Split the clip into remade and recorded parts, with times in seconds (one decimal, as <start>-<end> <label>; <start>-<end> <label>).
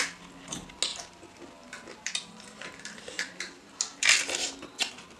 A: 0.0-0.9 recorded; 0.9-4.0 remade; 4.0-5.2 recorded